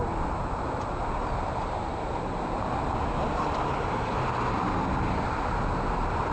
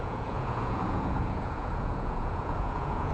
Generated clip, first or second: second